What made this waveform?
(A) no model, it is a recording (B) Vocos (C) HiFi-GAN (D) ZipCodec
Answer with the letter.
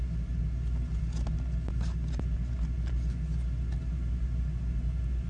A